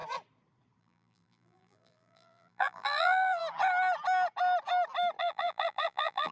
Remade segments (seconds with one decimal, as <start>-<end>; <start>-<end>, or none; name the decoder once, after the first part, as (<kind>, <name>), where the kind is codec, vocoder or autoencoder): 0.8-3.4 (vocoder, BigVGAN v2); 5.2-6.3